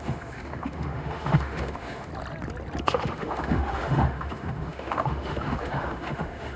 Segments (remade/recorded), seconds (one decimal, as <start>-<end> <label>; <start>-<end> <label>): 0.0-2.1 remade; 2.1-2.8 recorded; 2.8-6.6 remade